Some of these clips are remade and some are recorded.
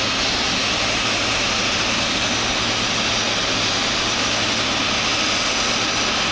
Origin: recorded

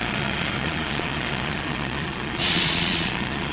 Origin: remade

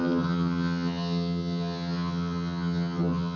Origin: remade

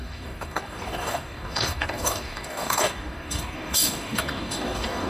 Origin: remade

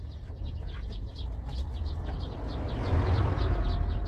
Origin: recorded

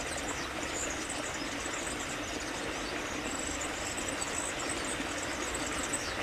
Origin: recorded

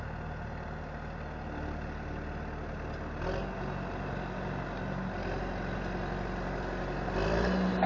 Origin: recorded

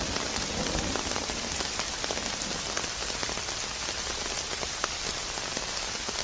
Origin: recorded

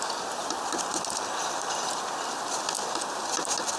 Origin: recorded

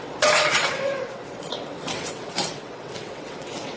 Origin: remade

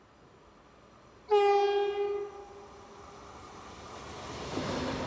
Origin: recorded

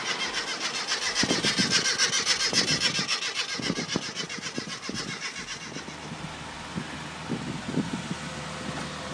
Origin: recorded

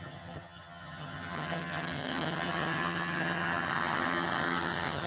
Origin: remade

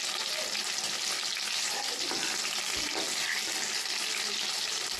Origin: recorded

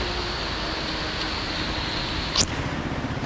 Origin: recorded